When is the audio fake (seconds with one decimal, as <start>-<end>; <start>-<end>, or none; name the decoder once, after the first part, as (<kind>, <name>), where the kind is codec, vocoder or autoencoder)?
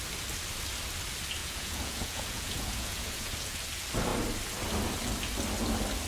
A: 1.4-3.6 (vocoder, Vocos)